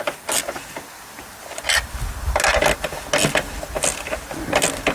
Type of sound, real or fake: real